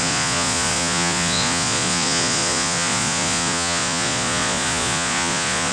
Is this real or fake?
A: fake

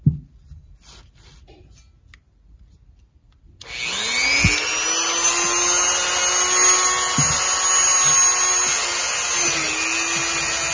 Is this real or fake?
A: real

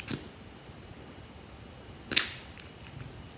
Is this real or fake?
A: real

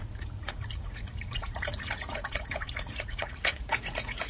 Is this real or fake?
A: fake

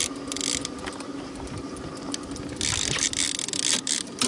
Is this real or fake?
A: real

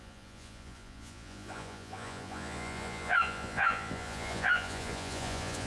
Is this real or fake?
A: fake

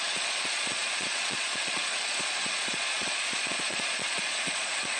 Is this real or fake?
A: fake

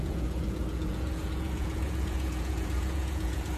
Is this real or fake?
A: fake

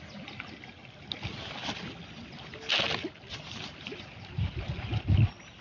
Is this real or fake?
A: real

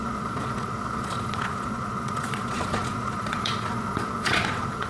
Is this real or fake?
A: fake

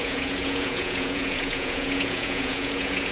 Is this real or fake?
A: fake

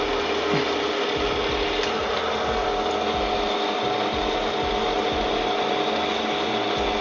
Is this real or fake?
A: real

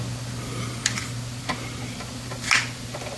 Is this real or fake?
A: real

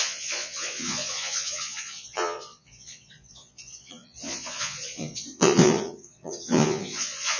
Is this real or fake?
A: fake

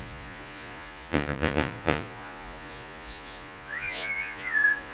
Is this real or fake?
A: fake